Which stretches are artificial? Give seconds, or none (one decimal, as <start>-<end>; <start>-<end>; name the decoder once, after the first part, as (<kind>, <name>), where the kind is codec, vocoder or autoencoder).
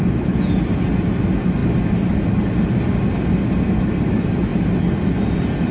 none